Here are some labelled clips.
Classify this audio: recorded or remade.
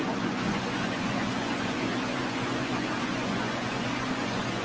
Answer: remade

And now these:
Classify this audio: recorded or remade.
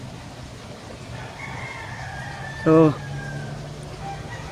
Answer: recorded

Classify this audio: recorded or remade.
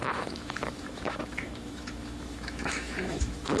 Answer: remade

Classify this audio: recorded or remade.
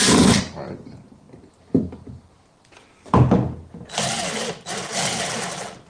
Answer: recorded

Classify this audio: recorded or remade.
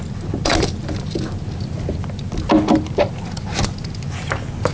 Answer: recorded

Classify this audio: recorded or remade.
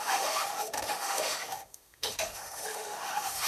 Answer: remade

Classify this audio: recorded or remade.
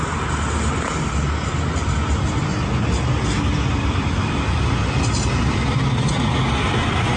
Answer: recorded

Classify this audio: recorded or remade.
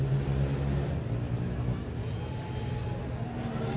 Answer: recorded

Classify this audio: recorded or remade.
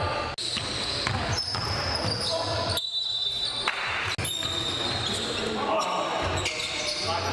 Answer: recorded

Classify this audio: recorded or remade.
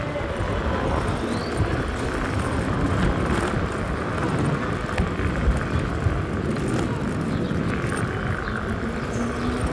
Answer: recorded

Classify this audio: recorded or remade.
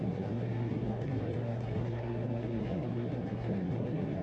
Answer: remade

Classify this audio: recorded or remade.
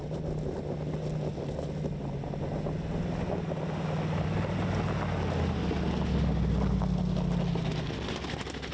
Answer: recorded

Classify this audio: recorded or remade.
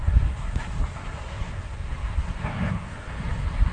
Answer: remade